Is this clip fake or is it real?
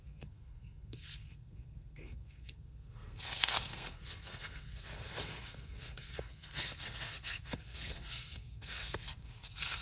fake